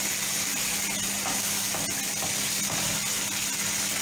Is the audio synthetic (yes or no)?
no